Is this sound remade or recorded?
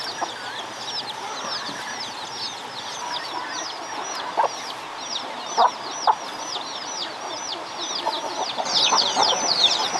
recorded